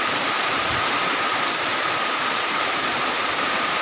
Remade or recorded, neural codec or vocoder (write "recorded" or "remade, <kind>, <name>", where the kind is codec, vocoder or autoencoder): remade, vocoder, BigVGAN v2